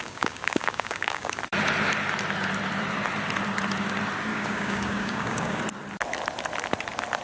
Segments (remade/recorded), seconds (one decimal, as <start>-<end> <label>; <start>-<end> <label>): 0.0-1.4 remade; 1.4-4.3 recorded; 4.3-5.6 remade; 5.6-7.2 recorded